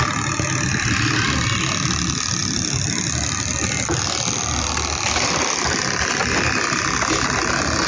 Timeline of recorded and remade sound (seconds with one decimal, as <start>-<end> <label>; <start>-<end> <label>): 0.0-7.9 recorded